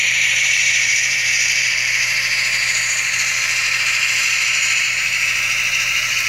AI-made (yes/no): yes